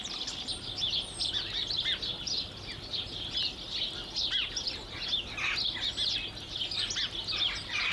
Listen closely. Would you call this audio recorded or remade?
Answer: recorded